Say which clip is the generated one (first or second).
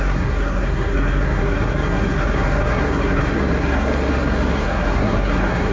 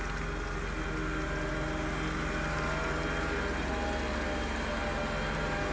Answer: first